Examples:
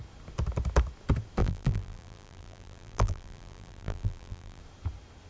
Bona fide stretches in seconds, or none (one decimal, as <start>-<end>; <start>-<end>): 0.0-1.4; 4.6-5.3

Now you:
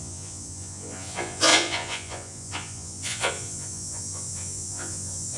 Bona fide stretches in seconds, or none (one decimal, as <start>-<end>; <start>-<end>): none

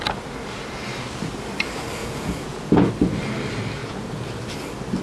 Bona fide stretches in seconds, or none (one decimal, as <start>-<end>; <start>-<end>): 0.0-2.0; 2.9-3.8; 4.4-5.0

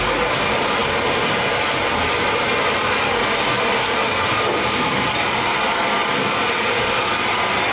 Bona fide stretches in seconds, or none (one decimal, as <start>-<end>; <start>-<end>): 0.0-7.7